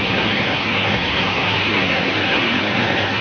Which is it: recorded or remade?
remade